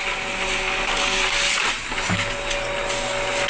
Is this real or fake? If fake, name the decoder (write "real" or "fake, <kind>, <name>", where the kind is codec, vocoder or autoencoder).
real